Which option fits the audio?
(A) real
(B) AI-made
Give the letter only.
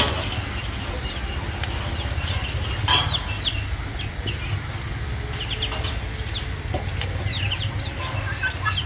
A